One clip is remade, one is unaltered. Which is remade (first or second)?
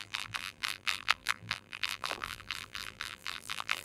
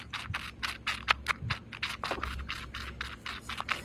first